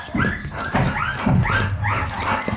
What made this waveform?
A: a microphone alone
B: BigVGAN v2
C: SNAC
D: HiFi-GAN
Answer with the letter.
A